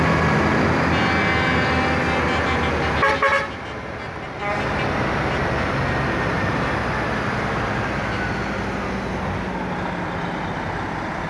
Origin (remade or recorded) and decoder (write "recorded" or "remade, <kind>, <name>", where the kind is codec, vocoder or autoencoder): recorded